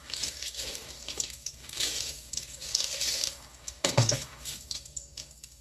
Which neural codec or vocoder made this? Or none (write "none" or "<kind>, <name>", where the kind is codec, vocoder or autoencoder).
codec, DAC